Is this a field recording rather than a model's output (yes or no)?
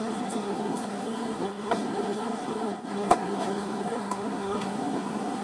no